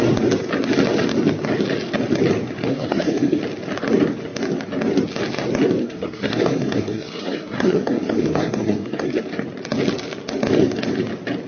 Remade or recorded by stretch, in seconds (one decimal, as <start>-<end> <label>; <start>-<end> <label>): 0.0-2.7 recorded; 2.7-3.4 remade; 3.4-5.8 recorded; 5.8-9.2 remade; 9.2-11.5 recorded